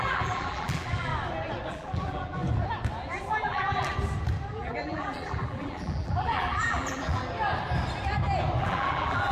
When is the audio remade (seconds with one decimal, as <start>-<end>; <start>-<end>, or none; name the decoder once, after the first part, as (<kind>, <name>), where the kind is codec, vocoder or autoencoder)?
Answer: 0.0-1.1 (vocoder, BigVGAN v2); 1.7-2.4; 3.3-3.9; 4.5-7.2; 8.6-9.3